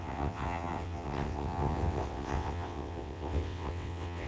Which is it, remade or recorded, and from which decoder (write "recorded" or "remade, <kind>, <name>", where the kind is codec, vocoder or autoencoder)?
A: remade, vocoder, WaveNeXt